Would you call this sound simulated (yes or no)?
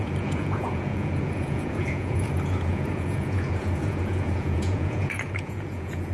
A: yes